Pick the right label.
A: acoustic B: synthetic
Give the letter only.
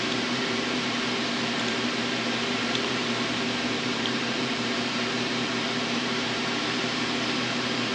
B